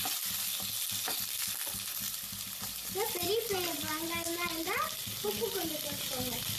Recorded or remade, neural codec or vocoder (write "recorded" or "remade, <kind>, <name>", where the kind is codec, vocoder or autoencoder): recorded